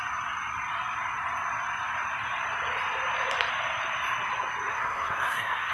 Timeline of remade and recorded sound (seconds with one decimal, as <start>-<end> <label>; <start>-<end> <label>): 0.0-4.7 recorded; 4.7-5.7 remade